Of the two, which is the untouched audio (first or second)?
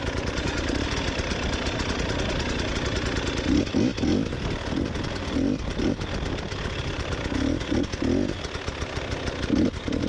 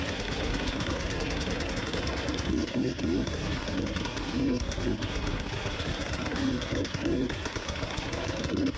first